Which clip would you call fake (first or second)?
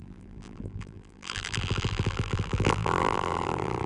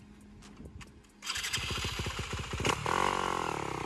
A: first